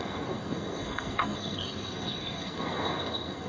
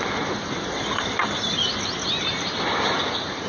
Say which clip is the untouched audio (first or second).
second